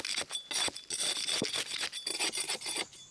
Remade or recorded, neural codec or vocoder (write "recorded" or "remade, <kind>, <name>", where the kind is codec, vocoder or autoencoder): recorded